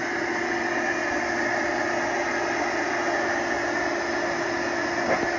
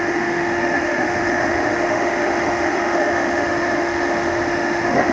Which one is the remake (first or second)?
second